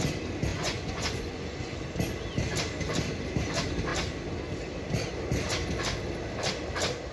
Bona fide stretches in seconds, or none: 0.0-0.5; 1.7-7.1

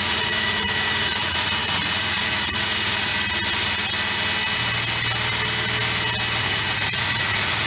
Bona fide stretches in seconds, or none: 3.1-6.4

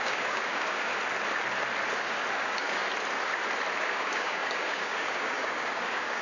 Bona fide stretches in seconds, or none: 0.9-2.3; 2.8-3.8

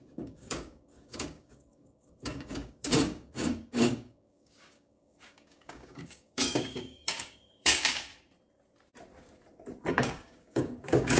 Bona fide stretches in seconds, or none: 8.1-9.9

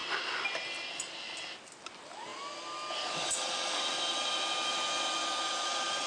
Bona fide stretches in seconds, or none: 0.0-6.1

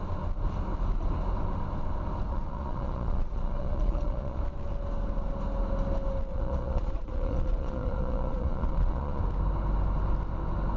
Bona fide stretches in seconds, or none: 0.0-2.3; 4.4-6.3; 9.2-10.8

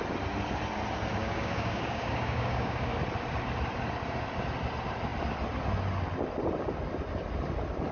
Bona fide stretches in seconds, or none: 0.0-1.2; 3.0-7.9